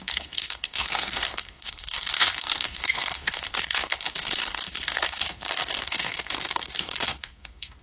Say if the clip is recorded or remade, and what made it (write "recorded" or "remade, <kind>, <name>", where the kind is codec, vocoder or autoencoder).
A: remade, codec, SNAC